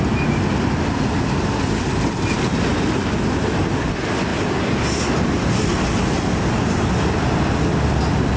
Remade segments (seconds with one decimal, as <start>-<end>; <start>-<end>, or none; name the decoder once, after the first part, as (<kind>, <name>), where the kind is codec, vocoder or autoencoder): none